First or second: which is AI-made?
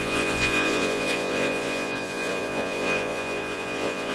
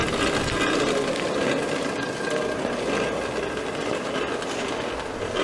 first